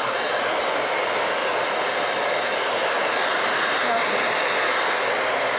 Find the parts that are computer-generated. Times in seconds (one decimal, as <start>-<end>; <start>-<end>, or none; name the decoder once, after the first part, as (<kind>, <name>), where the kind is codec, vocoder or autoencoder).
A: none